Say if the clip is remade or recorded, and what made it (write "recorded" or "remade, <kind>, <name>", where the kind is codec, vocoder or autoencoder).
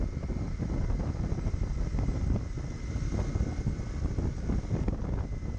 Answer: recorded